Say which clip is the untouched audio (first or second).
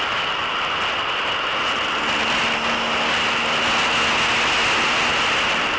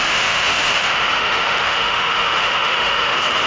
first